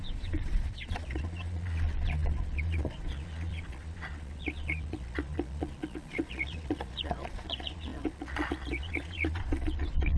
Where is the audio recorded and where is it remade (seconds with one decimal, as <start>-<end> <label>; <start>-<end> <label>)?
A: 0.0-10.2 remade